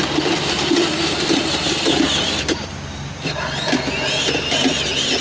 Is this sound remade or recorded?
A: recorded